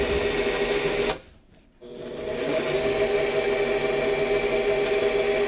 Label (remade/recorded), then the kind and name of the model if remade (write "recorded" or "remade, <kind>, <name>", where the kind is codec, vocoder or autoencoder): recorded